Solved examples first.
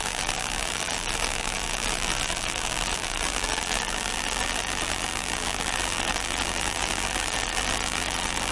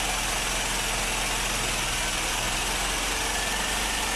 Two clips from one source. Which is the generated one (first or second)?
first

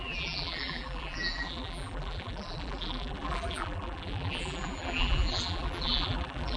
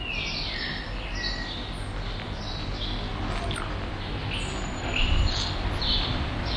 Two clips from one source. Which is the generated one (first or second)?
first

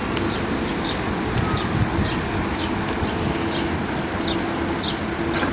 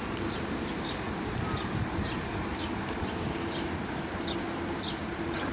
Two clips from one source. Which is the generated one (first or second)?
second